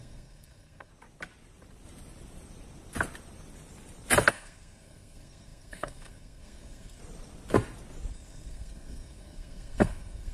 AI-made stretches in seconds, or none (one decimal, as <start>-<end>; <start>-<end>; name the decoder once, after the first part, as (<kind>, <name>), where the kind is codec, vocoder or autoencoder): 0.0-0.9 (codec, SNAC); 4.3-7.0; 8.1-10.3